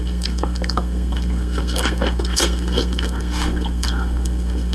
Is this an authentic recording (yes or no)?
no